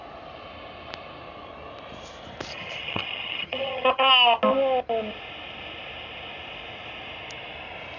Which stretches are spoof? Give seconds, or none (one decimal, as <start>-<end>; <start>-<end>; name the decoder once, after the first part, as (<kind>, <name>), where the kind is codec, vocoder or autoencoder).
2.5-4.1 (vocoder, HiFi-GAN)